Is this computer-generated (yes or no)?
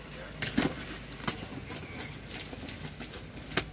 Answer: no